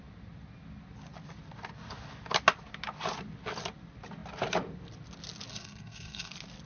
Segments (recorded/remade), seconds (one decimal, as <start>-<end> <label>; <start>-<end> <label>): 0.0-5.5 recorded; 5.5-6.3 remade; 6.3-6.7 recorded